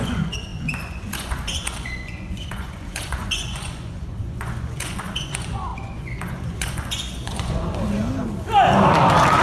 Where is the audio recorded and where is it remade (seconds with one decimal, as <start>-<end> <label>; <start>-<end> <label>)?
0.0-7.6 remade; 7.6-9.4 recorded